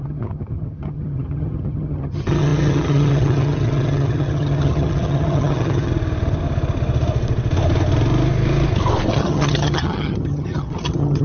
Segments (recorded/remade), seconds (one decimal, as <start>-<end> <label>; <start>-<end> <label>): 0.0-5.9 remade; 5.9-9.1 recorded; 9.1-11.2 remade